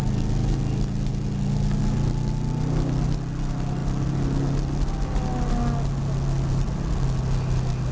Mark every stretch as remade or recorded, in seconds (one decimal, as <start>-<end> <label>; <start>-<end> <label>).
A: 0.0-7.9 recorded